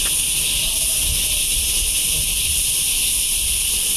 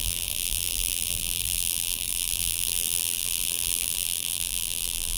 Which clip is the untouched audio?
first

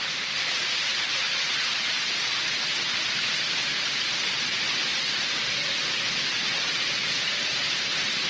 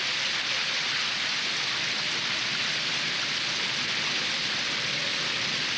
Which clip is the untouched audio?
second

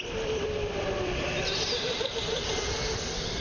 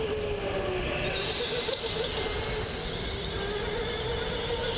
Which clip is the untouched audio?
second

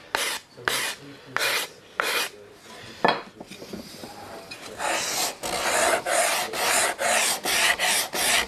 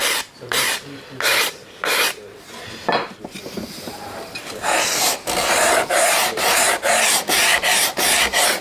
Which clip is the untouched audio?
first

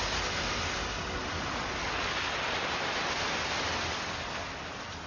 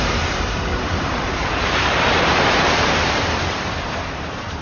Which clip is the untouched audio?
first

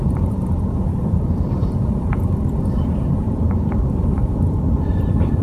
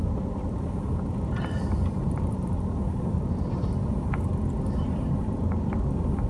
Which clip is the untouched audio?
second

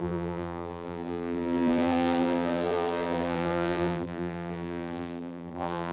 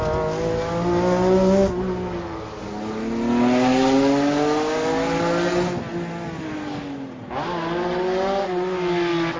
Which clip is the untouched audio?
second